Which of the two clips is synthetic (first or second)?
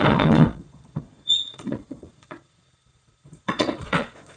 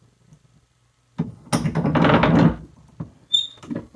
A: first